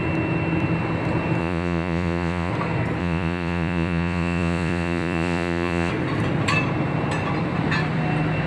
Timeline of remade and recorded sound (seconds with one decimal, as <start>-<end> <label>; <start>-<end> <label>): 0.0-1.4 recorded; 1.4-2.5 remade; 2.5-3.0 recorded; 3.0-5.9 remade; 5.9-8.5 recorded